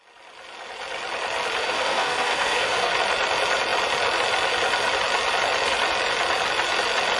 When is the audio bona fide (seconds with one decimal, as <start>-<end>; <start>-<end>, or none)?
0.0-1.6; 2.9-7.2